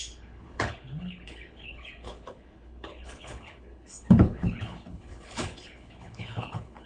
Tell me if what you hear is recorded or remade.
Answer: remade